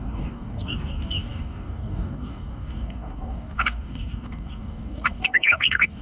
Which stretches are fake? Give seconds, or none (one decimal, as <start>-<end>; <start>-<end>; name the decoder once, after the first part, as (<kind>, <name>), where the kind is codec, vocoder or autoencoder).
0.0-6.0 (codec, DAC)